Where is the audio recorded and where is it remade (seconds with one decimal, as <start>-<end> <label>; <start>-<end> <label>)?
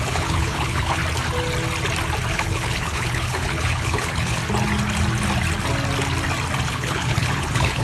0.0-1.0 remade; 1.0-2.3 recorded; 2.3-4.4 remade; 4.4-6.7 recorded; 6.7-7.8 remade